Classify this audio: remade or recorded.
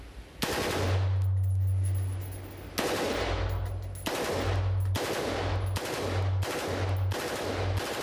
recorded